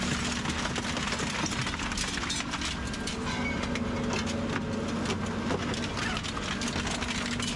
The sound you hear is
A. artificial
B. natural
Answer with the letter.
B